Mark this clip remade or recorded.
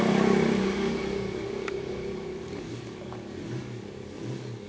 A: remade